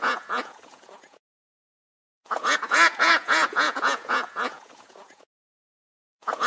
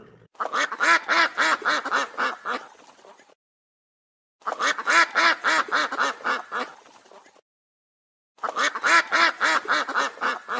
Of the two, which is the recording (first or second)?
second